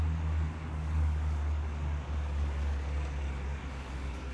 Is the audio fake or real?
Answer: fake